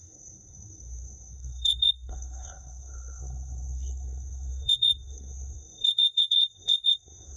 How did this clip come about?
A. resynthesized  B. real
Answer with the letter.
A